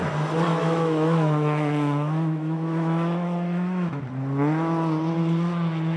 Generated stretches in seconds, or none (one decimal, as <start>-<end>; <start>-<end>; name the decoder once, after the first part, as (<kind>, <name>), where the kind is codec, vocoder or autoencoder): 0.5-4.0 (autoencoder, DAC-VAE)